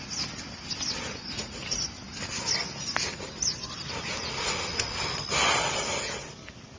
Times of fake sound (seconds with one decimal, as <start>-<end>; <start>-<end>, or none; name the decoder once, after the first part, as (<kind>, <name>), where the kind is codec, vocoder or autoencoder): none